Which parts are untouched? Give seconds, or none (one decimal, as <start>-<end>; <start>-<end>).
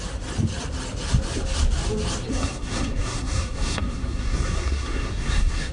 0.0-2.3